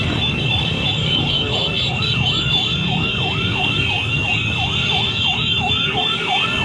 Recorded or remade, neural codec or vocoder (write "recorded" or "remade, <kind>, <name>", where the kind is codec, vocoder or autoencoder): remade, codec, DAC